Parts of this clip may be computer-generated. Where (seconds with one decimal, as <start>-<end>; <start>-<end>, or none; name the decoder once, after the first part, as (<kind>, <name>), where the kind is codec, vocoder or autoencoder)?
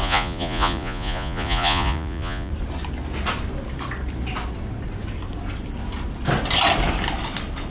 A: 0.0-2.5 (vocoder, Vocos)